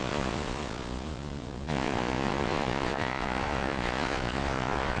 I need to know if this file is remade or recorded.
remade